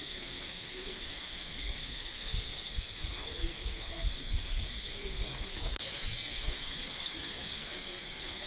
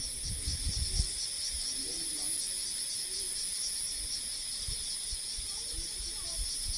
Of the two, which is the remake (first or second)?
first